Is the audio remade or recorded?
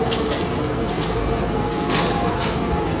remade